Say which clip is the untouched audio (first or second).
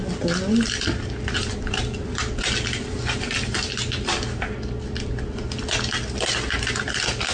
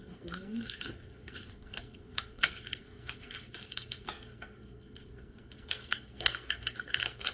first